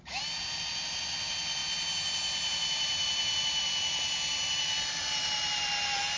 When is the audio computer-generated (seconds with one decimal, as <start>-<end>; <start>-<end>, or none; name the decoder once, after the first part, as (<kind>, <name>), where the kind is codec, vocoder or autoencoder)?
none